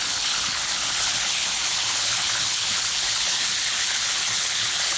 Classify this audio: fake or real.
fake